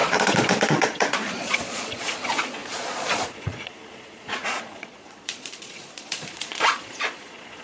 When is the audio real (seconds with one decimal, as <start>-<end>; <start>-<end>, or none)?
none